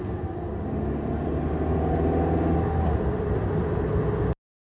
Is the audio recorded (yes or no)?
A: yes